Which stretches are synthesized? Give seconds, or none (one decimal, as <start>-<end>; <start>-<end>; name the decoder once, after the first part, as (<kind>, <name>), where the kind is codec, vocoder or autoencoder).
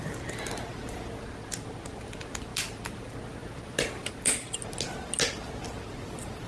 none